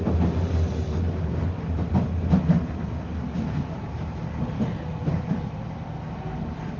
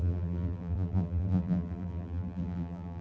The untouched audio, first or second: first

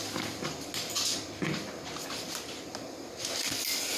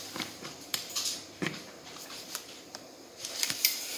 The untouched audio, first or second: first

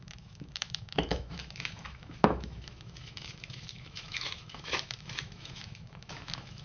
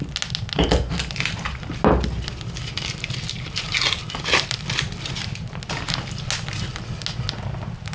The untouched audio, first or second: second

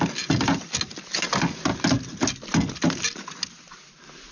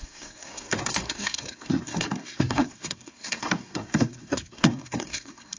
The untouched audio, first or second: first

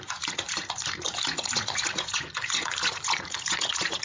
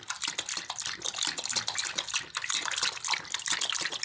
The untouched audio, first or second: second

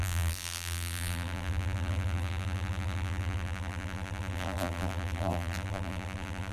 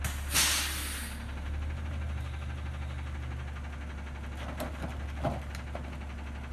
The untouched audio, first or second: second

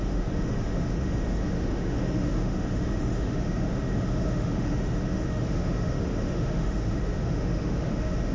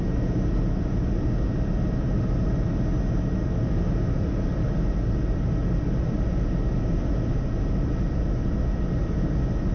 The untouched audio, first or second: second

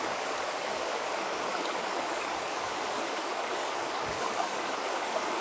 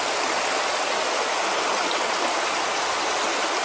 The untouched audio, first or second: second